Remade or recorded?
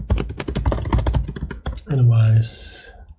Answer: recorded